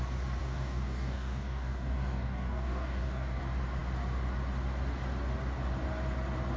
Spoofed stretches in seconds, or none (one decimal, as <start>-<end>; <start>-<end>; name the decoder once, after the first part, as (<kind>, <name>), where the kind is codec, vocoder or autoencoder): 0.4-3.4 (codec, DAC)